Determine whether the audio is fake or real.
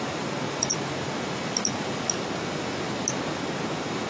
real